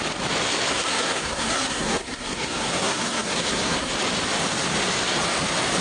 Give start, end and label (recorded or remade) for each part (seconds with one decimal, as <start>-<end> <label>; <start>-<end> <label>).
0.0-0.7 recorded; 0.7-3.9 remade; 3.9-5.8 recorded